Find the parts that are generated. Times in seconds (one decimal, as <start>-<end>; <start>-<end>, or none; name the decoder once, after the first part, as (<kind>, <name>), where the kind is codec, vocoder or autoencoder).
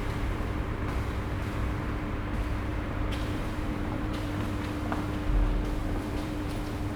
0.0-0.8 (vocoder, BigVGAN v2); 2.7-4.3; 5.8-6.6